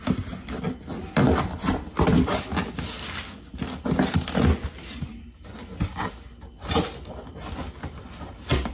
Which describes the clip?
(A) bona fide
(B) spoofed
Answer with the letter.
A